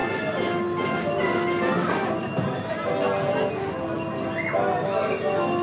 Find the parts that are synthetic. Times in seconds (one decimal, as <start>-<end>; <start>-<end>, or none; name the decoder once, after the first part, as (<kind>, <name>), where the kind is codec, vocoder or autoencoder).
none